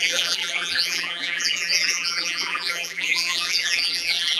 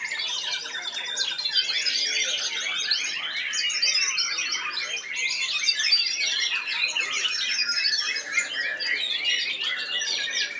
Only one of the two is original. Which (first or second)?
second